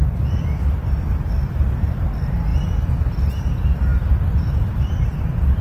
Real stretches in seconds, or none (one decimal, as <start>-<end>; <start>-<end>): 0.0-3.9; 4.5-5.6